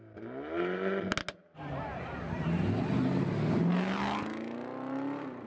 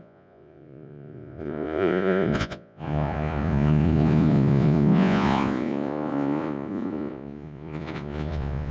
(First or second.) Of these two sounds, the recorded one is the first